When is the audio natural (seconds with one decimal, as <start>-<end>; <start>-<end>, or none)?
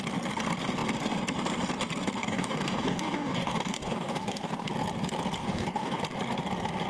0.0-2.2; 4.7-5.4; 6.0-6.9